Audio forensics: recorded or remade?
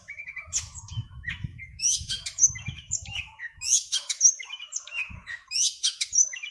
remade